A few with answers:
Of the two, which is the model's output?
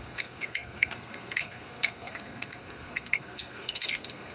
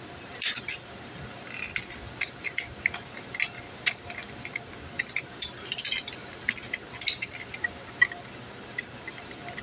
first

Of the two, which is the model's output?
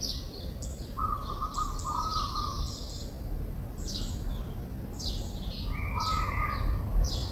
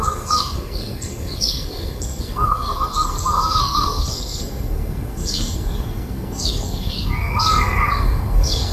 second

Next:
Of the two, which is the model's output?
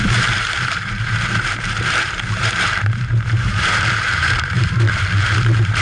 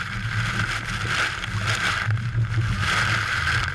first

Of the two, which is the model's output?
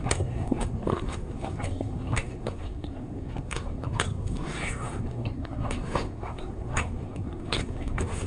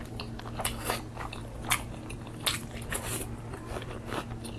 first